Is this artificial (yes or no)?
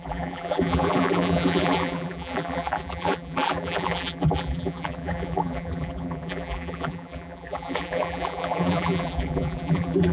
yes